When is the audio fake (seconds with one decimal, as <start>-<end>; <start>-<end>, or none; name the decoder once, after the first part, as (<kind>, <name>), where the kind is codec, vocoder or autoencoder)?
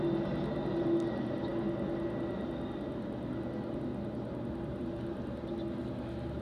none